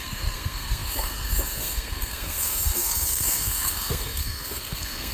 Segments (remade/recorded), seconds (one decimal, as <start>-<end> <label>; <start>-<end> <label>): 0.0-5.1 remade